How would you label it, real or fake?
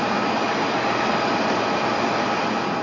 real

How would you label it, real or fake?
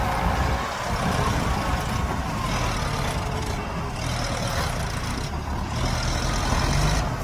real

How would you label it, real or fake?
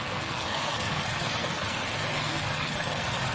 fake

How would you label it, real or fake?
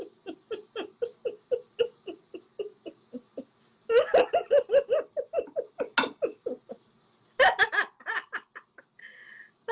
real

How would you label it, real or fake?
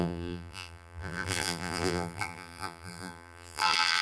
fake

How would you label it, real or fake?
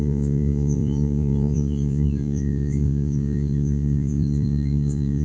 fake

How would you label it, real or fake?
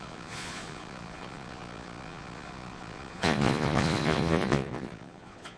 fake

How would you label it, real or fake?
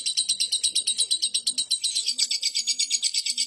real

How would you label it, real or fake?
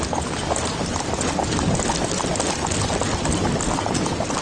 real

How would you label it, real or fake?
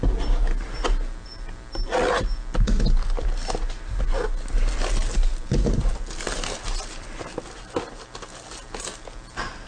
real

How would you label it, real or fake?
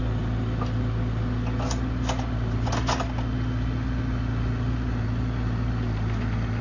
real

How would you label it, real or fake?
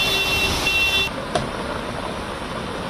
real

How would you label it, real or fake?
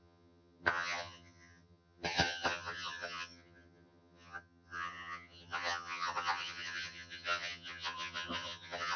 fake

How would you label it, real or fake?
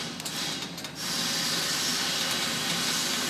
real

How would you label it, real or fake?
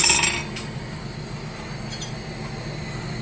real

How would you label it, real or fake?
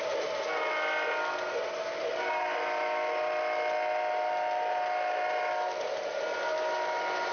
real